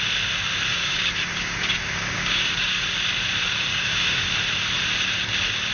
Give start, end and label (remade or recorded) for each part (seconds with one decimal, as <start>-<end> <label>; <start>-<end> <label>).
0.0-0.7 recorded; 0.7-2.8 remade; 2.8-3.7 recorded; 3.7-4.2 remade; 4.2-5.7 recorded